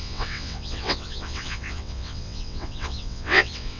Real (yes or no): no